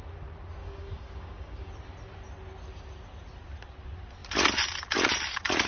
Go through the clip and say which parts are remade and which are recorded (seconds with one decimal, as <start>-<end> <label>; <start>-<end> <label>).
0.0-0.6 recorded; 0.6-1.7 remade; 1.7-5.7 recorded